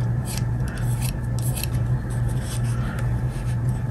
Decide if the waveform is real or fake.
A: real